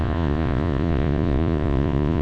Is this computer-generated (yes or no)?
yes